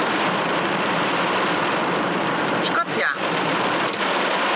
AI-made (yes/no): yes